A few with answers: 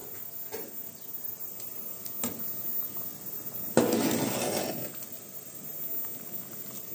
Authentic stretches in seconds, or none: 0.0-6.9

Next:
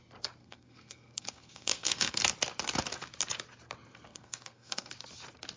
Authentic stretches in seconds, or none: 0.0-0.4; 2.2-4.1; 4.9-5.6

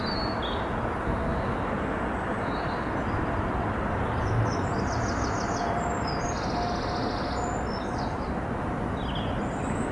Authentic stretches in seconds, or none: 0.0-9.9

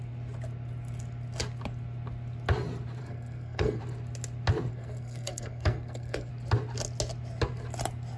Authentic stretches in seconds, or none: 0.0-3.0; 3.8-4.7; 6.3-8.2

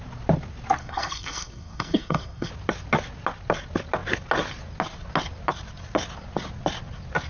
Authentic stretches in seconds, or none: 0.0-0.8; 2.5-7.3

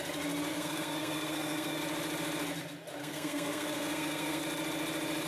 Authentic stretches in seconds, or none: 0.0-0.5; 1.8-3.0; 4.4-5.3

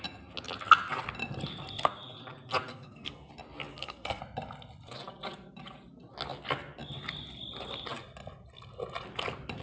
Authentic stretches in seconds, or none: 0.0-2.7; 3.3-3.7; 4.2-9.6

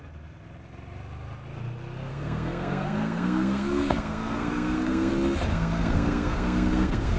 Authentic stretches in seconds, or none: 0.0-2.1; 5.1-5.5